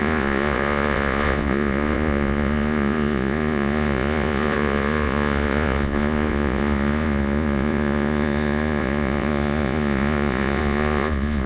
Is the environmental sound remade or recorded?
remade